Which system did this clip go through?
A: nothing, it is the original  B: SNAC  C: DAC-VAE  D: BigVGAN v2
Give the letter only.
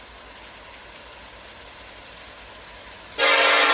A